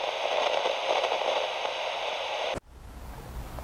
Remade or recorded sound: recorded